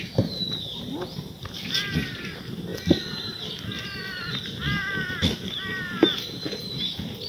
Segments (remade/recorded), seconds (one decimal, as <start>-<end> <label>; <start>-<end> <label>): 0.0-0.7 recorded; 0.7-1.2 remade; 1.2-2.7 recorded; 2.7-4.6 remade; 4.6-5.2 recorded; 5.2-6.6 remade; 6.6-7.3 recorded